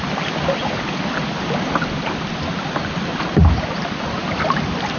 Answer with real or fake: real